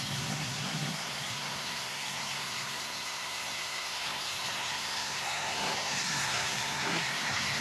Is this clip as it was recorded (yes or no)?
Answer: no